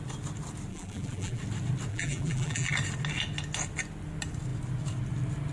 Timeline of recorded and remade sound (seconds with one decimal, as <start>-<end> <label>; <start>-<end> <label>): 0.0-0.7 recorded; 0.7-1.4 remade; 1.4-1.9 recorded; 1.9-2.7 remade; 2.7-5.5 recorded

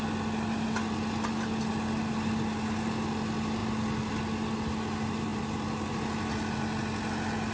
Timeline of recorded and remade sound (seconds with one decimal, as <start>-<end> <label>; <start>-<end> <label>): 0.0-5.3 recorded; 5.3-6.0 remade; 6.0-7.5 recorded

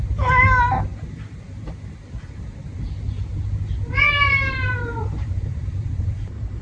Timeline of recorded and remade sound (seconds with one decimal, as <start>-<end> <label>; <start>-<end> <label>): 0.0-0.9 recorded; 0.9-2.4 remade; 2.4-4.4 recorded; 4.4-6.6 remade

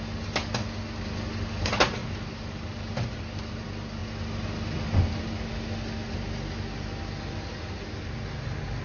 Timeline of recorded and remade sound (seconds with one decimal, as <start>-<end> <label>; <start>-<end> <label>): 0.0-2.0 recorded; 2.0-3.6 remade; 3.6-8.8 recorded